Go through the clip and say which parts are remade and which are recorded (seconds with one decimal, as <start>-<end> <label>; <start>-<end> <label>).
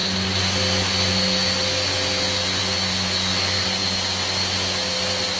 0.0-5.4 recorded